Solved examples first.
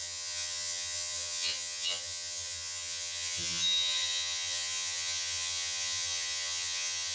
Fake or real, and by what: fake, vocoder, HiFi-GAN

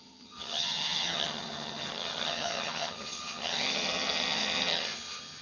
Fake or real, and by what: fake, vocoder, HiFi-GAN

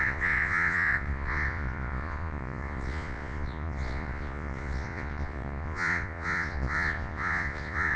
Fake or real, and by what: fake, vocoder, Vocos